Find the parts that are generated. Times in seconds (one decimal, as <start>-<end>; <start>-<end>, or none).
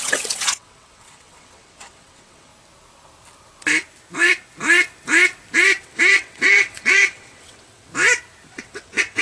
0.0-2.5; 5.8-7.9; 8.5-9.2